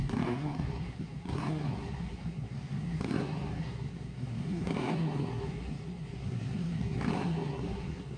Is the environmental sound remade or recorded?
remade